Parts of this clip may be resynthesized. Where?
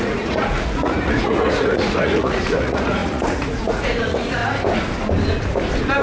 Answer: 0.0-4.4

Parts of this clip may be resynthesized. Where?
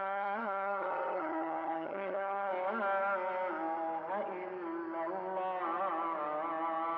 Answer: 0.0-2.5